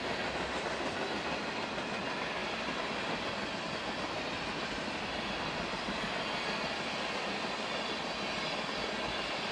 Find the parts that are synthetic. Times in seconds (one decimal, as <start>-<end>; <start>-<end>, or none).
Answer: none